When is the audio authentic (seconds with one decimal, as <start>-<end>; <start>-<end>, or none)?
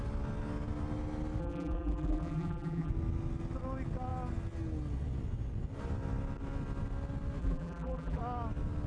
0.0-1.4; 2.9-7.4; 8.2-8.9